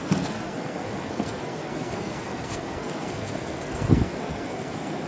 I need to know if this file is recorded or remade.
remade